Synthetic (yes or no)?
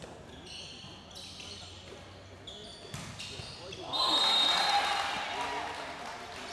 no